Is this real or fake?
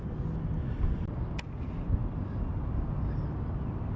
real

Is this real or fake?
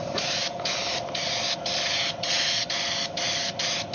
real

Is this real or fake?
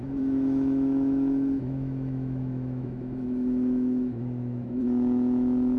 fake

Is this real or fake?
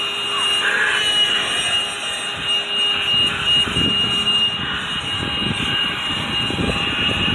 real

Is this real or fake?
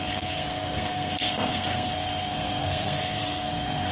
fake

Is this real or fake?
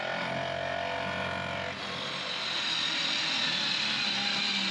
real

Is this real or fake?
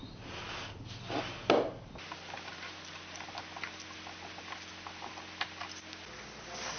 real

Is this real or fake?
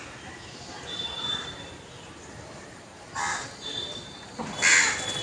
real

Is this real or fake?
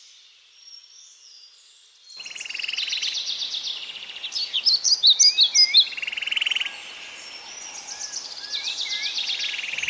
real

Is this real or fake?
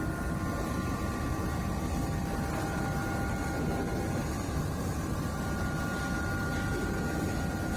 real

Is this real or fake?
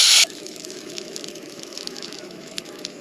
fake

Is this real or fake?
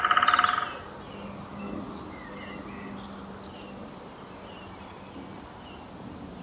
real